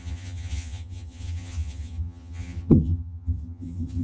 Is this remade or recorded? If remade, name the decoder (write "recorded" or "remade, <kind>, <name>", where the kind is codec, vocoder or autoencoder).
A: remade, vocoder, HiFi-GAN